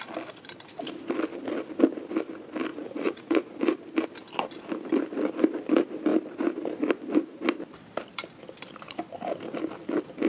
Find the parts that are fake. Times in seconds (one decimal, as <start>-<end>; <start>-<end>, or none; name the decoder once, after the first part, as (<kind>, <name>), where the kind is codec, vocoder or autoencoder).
2.7-3.6 (vocoder, Vocos)